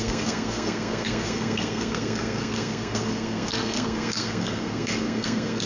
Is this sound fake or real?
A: fake